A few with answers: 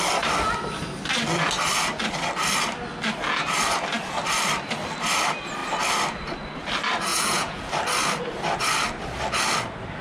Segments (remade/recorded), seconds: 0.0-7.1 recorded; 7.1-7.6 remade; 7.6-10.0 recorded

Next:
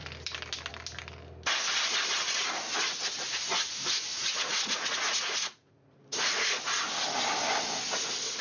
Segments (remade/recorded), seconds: 0.0-4.1 recorded; 4.1-6.6 remade; 6.6-8.4 recorded

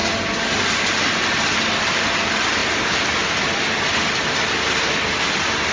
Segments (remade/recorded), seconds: 0.0-5.7 recorded

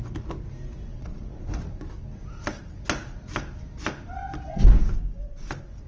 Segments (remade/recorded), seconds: 0.0-0.9 recorded; 0.9-1.6 remade; 1.6-5.9 recorded